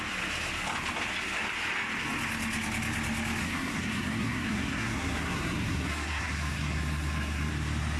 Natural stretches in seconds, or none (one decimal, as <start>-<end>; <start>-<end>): 0.0-3.4; 7.5-8.0